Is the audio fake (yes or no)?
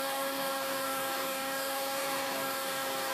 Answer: yes